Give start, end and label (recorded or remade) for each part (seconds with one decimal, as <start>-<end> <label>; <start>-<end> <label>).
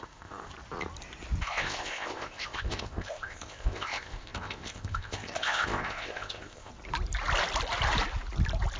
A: 0.0-0.5 remade; 0.5-1.4 recorded; 1.4-6.7 remade; 6.7-8.8 recorded